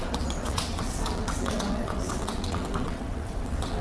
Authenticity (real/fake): fake